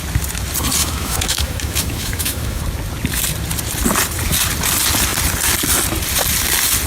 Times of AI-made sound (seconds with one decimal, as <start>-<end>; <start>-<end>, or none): 0.8-2.6